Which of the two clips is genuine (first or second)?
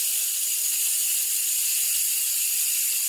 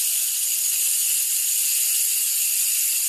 second